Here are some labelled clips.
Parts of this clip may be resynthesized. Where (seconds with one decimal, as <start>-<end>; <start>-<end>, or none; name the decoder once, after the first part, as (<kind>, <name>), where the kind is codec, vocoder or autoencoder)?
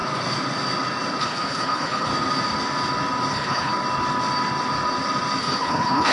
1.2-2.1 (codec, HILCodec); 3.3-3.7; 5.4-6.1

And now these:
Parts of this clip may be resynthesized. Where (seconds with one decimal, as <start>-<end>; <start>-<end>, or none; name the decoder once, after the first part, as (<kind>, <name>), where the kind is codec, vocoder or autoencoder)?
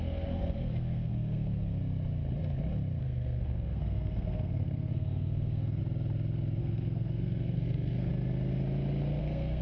0.0-1.8 (codec, SNAC); 3.0-5.8; 6.6-8.1; 9.2-9.6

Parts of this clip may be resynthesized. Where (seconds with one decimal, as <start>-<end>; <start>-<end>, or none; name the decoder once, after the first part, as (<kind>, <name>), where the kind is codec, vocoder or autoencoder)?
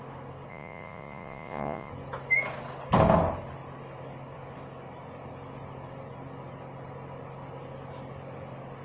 0.5-1.9 (vocoder, Vocos)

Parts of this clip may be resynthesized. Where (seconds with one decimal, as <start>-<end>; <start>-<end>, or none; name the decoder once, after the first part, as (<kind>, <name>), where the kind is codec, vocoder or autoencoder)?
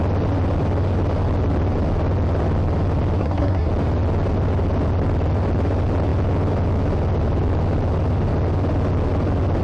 3.2-3.7 (codec, SNAC)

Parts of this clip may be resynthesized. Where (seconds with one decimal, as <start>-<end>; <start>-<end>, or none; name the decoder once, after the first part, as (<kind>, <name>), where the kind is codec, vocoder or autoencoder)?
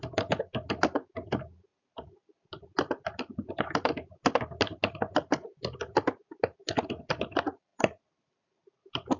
none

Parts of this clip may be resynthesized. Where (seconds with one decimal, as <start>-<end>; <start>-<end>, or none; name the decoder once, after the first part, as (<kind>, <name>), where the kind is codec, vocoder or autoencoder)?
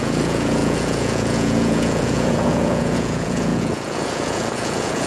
0.0-5.1 (vocoder, Vocos)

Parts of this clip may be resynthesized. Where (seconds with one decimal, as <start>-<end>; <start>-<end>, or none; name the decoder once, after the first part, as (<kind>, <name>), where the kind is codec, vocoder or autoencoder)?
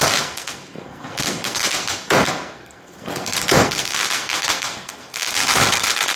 0.0-6.2 (codec, SNAC)